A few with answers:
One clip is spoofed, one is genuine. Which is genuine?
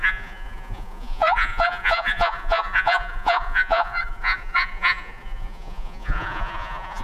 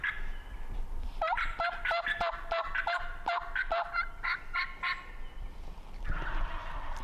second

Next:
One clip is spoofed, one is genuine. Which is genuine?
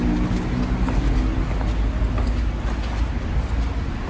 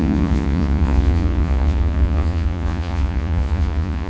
first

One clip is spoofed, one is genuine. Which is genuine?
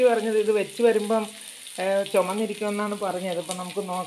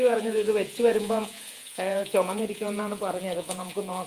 first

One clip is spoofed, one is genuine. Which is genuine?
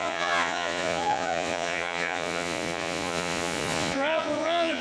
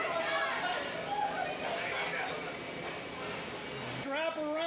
second